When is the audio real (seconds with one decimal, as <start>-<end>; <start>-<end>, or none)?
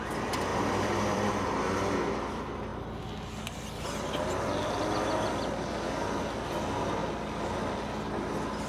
0.0-0.5; 1.3-8.7